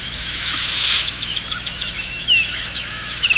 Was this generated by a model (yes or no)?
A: yes